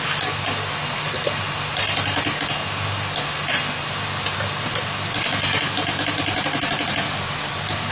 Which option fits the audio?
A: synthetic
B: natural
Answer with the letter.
B